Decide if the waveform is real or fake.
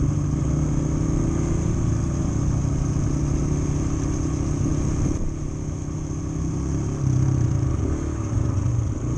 real